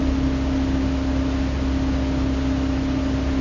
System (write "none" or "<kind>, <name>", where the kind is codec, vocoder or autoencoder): none